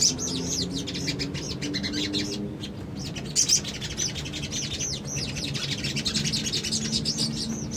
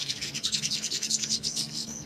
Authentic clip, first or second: first